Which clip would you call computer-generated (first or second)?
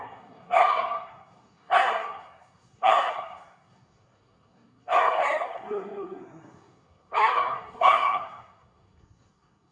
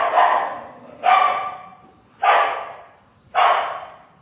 first